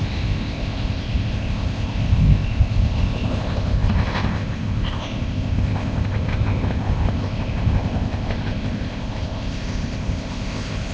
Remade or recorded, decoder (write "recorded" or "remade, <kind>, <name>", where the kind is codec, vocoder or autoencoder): remade, codec, ZipCodec